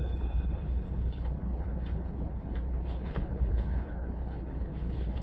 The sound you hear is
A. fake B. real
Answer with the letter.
A